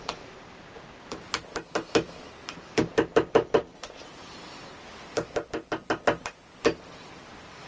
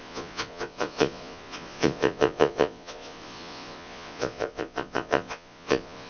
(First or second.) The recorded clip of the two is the first